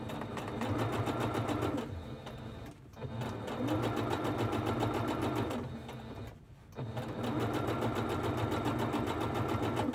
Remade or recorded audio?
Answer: recorded